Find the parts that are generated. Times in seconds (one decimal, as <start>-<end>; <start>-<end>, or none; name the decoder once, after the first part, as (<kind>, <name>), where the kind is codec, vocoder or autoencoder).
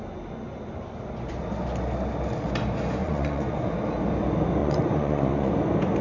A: 3.0-3.7 (vocoder, Vocos); 4.6-5.5